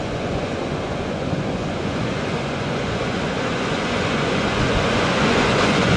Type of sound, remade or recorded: remade